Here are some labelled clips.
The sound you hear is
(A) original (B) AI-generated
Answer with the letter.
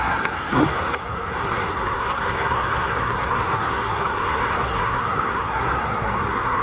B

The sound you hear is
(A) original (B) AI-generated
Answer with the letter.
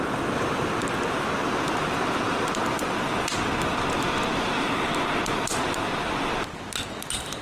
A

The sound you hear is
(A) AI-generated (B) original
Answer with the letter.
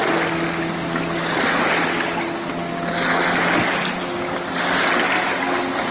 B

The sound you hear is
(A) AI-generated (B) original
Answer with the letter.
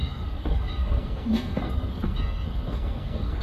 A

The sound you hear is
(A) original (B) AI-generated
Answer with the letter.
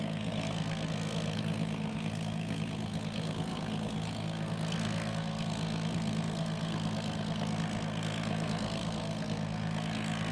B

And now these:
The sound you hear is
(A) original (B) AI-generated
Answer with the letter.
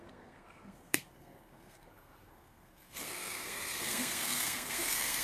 B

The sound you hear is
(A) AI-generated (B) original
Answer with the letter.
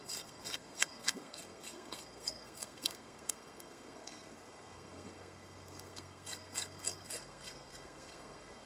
A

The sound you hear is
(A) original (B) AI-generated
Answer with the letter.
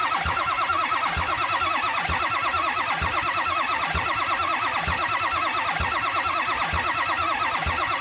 A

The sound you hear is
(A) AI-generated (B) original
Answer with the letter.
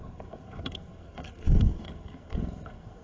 A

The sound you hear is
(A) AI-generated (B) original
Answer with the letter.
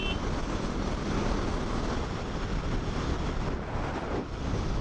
B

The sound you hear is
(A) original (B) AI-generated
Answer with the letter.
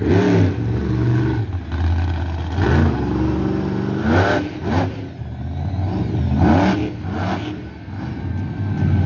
A